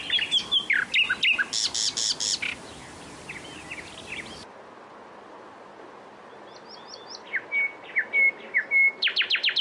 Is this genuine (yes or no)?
yes